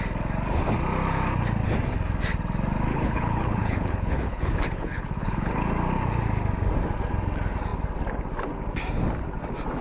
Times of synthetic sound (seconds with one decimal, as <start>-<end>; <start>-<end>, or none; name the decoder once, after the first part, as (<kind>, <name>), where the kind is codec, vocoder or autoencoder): 2.9-5.6 (codec, HILCodec)